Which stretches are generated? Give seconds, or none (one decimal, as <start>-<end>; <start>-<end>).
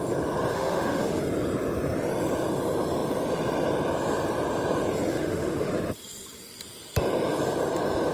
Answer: 0.5-1.2; 5.1-5.7